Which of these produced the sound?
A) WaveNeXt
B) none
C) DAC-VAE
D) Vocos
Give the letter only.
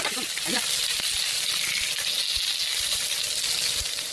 B